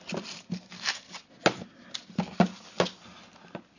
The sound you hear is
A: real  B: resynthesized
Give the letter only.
A